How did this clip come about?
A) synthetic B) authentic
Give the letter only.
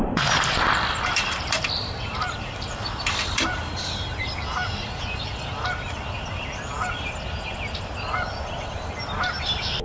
A